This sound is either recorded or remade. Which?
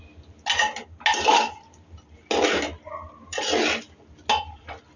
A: recorded